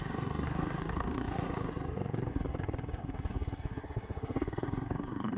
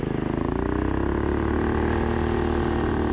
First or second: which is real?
second